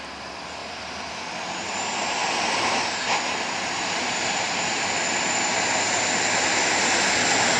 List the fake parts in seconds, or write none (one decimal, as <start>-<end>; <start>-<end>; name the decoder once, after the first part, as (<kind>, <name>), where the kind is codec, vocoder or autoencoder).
0.6-1.2 (vocoder, BigVGAN v2); 2.2-4.9